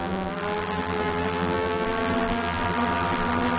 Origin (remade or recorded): remade